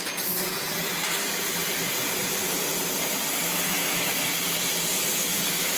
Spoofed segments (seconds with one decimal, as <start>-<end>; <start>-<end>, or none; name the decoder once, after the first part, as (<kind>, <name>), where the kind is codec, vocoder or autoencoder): 3.4-4.1 (autoencoder, DAC-VAE); 4.9-5.8